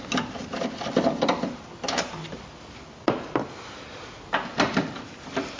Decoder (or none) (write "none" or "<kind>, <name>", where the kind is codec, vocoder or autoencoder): none